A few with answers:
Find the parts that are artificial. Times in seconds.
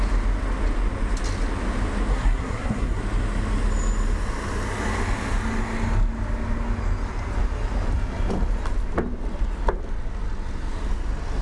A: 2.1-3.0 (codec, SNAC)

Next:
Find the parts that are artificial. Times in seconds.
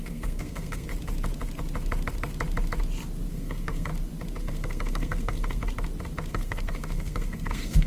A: 0.0-0.9 (codec, SNAC); 3.3-3.9; 4.4-5.6; 6.3-7.9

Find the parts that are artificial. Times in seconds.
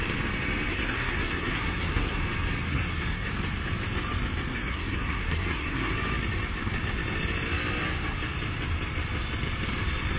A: 0.7-2.2 (codec, SNAC); 2.7-3.3; 4.5-5.9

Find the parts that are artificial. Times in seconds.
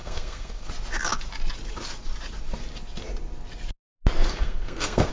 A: 0.0-0.7 (codec, SNAC); 4.3-5.1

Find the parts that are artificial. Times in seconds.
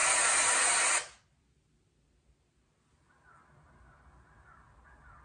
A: none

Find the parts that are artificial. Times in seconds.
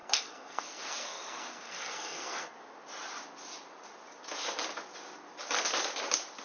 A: 0.0-2.5 (codec, SNAC)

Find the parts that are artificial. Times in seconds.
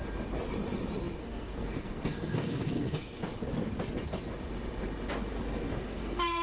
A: 1.2-3.3 (codec, SNAC); 5.3-6.4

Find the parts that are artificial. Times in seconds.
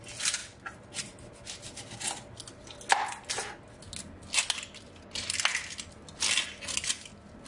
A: none